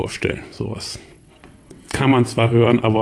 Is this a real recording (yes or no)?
no